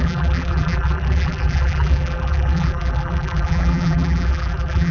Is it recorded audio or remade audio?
remade